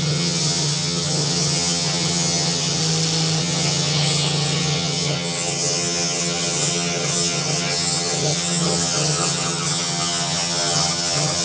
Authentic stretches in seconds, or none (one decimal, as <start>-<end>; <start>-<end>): 2.8-3.4